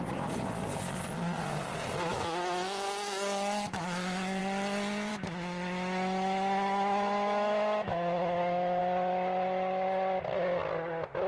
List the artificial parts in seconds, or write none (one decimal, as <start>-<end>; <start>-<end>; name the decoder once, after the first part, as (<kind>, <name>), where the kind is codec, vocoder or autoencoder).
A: 2.1-4.4 (autoencoder, DAC-VAE); 5.1-8.8